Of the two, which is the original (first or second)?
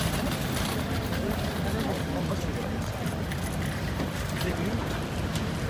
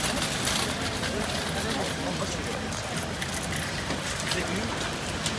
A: second